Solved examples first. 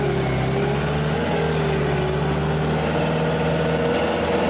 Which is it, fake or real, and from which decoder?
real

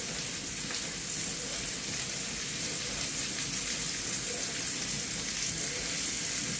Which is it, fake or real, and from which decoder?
real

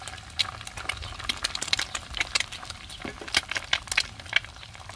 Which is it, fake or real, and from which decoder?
real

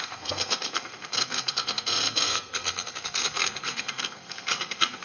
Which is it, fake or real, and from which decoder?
fake, codec, SNAC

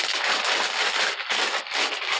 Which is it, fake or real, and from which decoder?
real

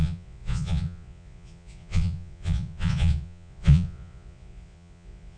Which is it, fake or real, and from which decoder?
fake, vocoder, Vocos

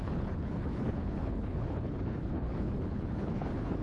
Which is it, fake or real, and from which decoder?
fake, codec, HILCodec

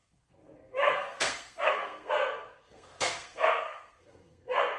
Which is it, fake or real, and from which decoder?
fake, codec, SNAC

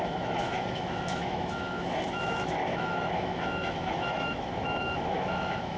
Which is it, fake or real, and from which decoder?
fake, autoencoder, DAC-VAE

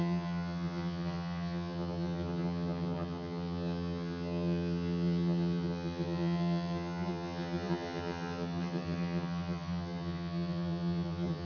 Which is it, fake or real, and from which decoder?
fake, vocoder, HiFi-GAN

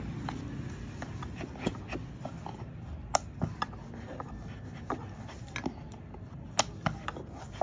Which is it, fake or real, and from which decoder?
real